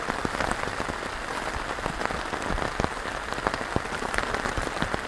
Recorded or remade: recorded